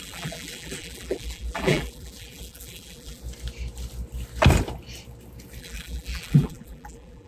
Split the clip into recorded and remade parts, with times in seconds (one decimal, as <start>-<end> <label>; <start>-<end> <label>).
0.0-3.2 remade; 3.2-5.6 recorded; 5.6-7.3 remade